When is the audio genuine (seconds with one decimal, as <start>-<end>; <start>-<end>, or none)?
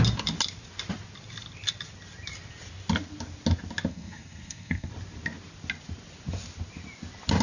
0.0-3.9; 4.9-7.4